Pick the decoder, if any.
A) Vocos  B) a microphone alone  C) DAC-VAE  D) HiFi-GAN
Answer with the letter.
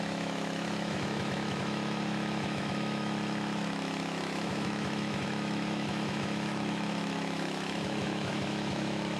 C